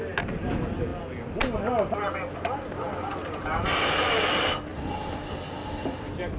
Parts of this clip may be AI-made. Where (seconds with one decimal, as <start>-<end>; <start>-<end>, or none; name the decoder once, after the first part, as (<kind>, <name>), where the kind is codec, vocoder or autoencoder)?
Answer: none

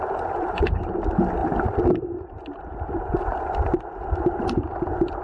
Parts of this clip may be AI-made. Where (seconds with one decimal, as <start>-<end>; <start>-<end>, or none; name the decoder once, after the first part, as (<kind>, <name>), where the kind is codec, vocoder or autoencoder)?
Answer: none

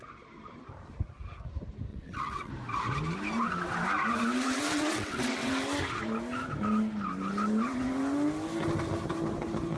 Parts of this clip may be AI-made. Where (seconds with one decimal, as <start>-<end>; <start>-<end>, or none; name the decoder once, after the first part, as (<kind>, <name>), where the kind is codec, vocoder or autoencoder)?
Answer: 1.9-2.5 (vocoder, WaveNeXt); 4.7-5.5